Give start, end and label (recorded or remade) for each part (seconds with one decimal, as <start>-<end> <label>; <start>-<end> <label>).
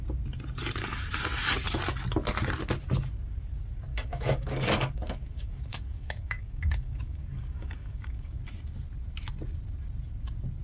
0.0-3.9 recorded; 3.9-8.4 remade; 8.4-10.6 recorded